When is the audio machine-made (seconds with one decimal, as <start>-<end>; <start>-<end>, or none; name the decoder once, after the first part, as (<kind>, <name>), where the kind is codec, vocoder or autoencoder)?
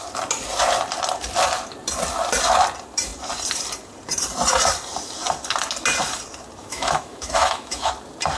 6.6-7.9 (autoencoder, DAC-VAE)